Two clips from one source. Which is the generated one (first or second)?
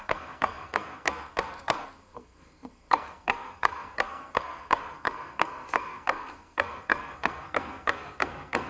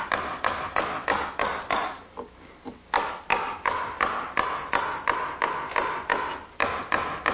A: first